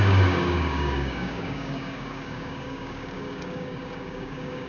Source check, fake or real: fake